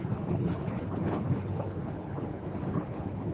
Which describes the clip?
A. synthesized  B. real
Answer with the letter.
A